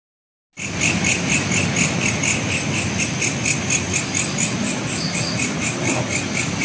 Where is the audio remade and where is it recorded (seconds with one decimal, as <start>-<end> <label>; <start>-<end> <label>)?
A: 0.0-6.6 recorded